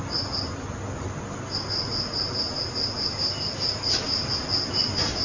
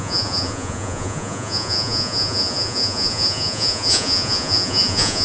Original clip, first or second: first